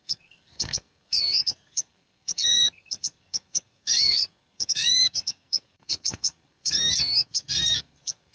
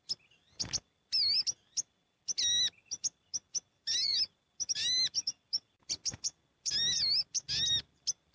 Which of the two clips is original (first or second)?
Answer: second